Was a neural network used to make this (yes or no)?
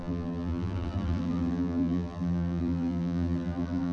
yes